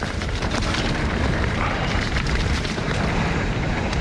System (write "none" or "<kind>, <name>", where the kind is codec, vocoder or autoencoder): vocoder, BigVGAN v2